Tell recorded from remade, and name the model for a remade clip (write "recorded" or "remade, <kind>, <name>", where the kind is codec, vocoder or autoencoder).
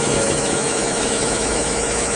remade, autoencoder, DAC-VAE